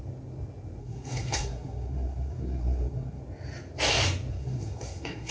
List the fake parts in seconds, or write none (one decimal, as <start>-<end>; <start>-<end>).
0.8-3.2; 4.3-5.3